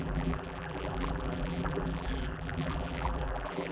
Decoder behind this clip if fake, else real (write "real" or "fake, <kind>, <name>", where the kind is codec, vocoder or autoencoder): fake, vocoder, BigVGAN v2